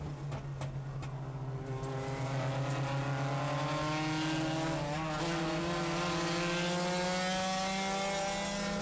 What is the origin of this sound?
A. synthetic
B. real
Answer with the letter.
B